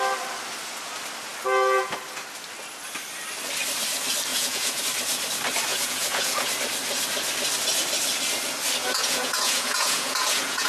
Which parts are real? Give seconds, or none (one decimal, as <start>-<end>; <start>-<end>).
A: 0.0-4.3; 4.8-5.7; 6.5-8.8